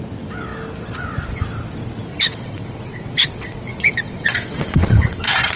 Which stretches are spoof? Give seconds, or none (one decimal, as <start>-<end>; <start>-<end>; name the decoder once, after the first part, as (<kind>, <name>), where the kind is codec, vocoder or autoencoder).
2.1-5.6 (vocoder, WaveNeXt)